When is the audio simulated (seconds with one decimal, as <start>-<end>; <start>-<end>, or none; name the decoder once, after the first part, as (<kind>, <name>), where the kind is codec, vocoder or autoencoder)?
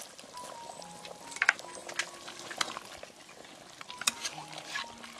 none